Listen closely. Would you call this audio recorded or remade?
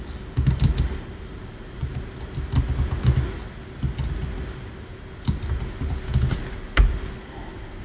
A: recorded